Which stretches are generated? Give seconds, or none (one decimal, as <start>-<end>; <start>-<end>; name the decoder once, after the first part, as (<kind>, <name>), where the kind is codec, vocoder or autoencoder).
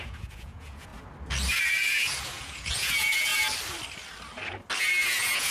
0.0-0.9 (vocoder, Vocos); 1.6-3.3; 4.8-5.5